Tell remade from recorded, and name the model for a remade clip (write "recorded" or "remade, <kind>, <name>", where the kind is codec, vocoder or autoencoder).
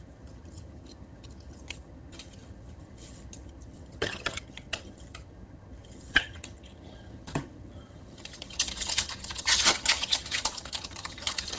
remade, vocoder, HiFi-GAN